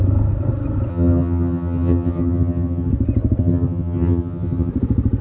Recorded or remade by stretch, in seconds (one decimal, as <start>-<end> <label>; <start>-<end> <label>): 0.0-0.9 recorded; 0.9-2.9 remade; 2.9-3.4 recorded; 3.4-4.7 remade; 4.7-5.2 recorded